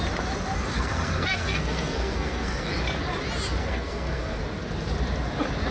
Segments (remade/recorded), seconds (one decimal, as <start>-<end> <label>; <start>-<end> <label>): 0.0-0.7 recorded; 0.7-2.7 remade; 2.7-3.6 recorded; 3.6-4.4 remade; 4.4-5.7 recorded